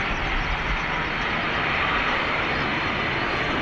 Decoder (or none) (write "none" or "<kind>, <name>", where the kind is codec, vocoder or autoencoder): none